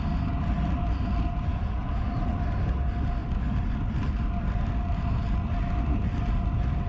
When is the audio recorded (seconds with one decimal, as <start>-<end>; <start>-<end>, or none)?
0.0-1.5; 2.1-6.9